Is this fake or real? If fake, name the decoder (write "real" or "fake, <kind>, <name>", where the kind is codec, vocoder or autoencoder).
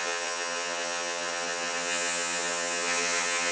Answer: fake, vocoder, HiFi-GAN